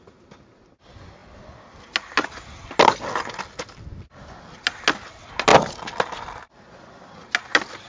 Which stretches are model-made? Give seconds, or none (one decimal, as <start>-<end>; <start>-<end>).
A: none